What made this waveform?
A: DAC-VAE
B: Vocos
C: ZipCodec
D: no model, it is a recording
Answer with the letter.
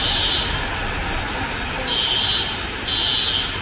D